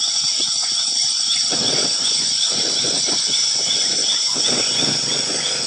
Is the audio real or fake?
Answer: fake